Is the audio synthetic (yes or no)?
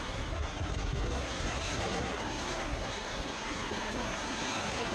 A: yes